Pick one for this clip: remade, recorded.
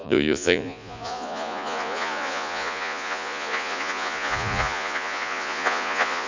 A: remade